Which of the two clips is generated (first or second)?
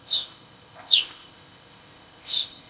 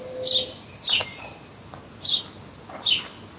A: first